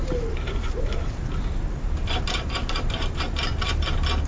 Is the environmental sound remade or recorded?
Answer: recorded